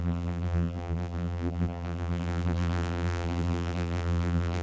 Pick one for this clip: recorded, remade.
remade